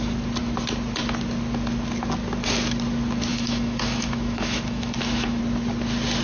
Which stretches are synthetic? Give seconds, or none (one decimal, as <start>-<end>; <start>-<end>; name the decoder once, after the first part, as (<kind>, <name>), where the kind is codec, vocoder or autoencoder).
3.3-5.4 (autoencoder, DAC-VAE)